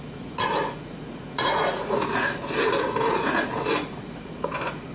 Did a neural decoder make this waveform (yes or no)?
yes